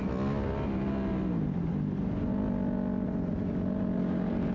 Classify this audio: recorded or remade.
recorded